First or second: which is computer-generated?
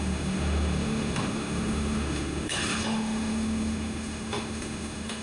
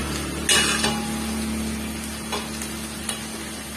first